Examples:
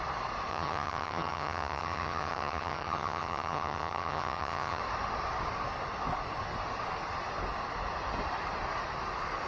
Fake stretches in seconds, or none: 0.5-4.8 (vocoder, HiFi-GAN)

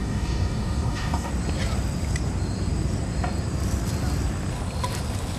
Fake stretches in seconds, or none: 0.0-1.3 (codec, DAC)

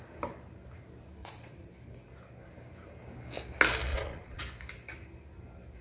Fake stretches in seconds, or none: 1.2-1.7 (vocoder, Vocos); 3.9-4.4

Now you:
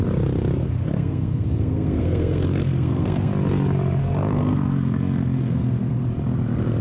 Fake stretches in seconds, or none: 0.6-3.3 (codec, SNAC); 4.0-6.0

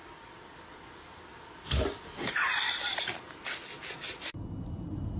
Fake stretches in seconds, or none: 0.0-3.0 (vocoder, BigVGAN v2)

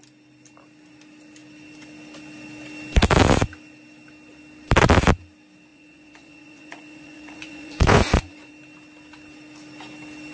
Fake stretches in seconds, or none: 5.7-8.5 (vocoder, Vocos)